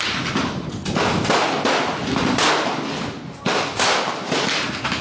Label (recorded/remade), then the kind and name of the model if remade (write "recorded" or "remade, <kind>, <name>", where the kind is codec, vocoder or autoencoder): recorded